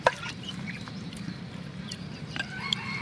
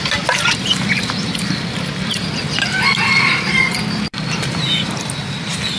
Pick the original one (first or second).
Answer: second